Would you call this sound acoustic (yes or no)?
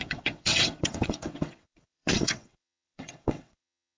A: no